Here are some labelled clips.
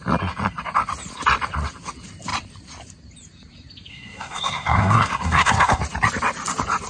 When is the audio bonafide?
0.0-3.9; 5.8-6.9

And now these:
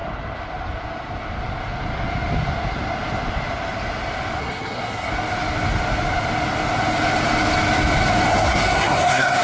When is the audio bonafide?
0.0-4.4; 5.1-8.3

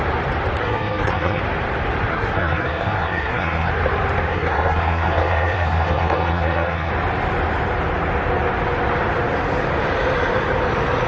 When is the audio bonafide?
0.0-0.6; 1.4-2.1; 3.7-4.3; 6.9-11.1

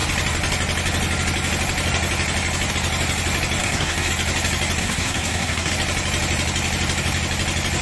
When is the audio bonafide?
0.0-3.6; 4.1-4.8; 5.7-7.8

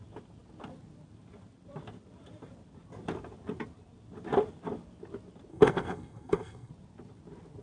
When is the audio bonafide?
0.0-5.5; 6.7-7.6

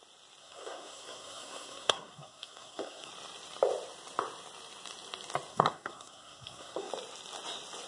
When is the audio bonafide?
0.0-0.4; 3.1-5.5; 6.9-7.9

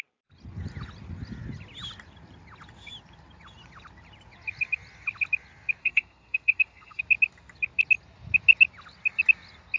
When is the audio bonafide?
0.0-5.8; 7.0-9.8